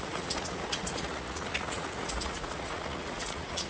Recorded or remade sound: remade